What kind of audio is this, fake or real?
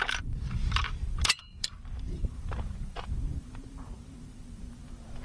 fake